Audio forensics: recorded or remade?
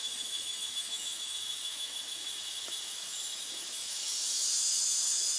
remade